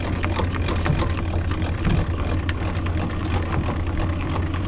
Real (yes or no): yes